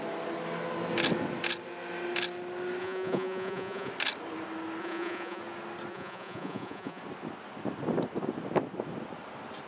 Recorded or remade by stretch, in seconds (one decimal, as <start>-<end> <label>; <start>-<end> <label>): 0.0-2.8 recorded; 2.8-3.9 remade; 3.9-4.8 recorded; 4.8-5.4 remade; 5.4-5.9 recorded; 5.9-7.0 remade; 7.0-9.7 recorded